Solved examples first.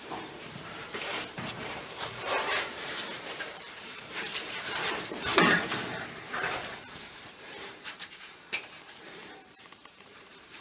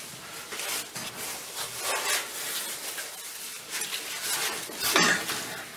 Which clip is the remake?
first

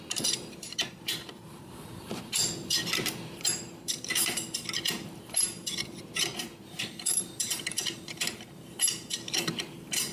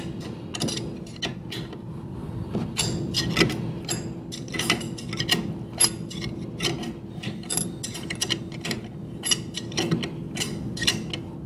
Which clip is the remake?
first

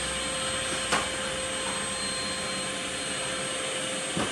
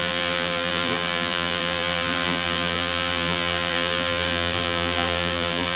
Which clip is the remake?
second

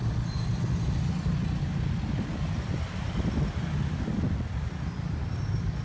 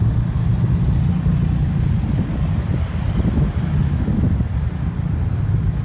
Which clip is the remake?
first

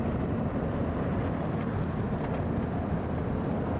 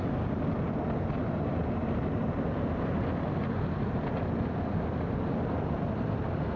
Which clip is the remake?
first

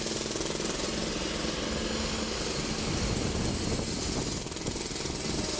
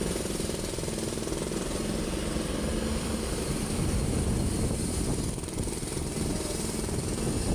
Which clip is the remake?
second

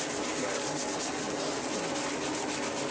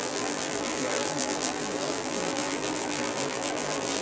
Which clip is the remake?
second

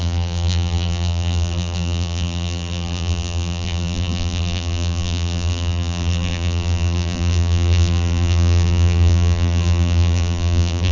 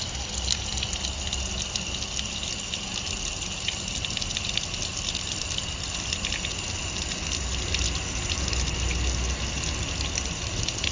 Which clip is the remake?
first